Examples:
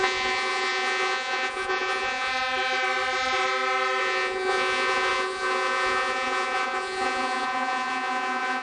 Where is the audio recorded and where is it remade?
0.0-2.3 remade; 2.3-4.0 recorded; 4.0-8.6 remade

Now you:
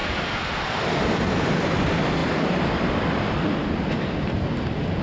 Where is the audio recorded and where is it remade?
0.0-5.0 recorded

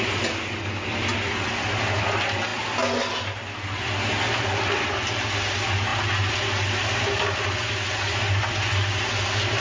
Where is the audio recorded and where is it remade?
0.0-9.6 recorded